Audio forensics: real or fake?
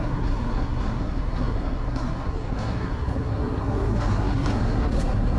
fake